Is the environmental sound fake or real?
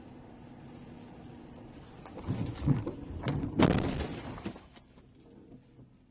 real